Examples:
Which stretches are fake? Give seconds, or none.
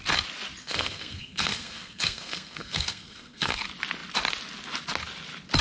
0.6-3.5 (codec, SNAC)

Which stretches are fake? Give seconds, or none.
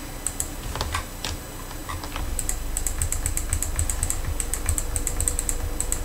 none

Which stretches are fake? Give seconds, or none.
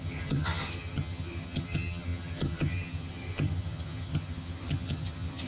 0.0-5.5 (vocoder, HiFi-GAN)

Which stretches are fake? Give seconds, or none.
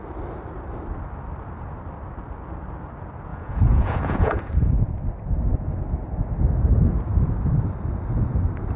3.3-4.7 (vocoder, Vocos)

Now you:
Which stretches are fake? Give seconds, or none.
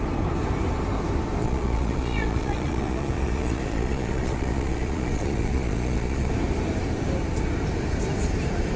1.4-6.3 (vocoder, Vocos)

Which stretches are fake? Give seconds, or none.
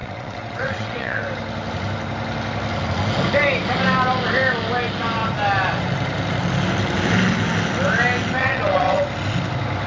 0.0-1.2 (vocoder, WaveNeXt); 8.4-9.0